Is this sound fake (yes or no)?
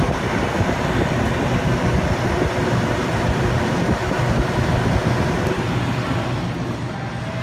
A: no